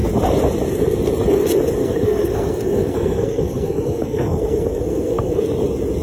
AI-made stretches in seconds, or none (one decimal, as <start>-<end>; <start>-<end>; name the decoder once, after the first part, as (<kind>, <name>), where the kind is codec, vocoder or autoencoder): 1.8-5.4 (codec, SNAC)